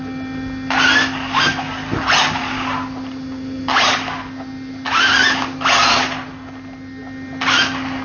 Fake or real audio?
real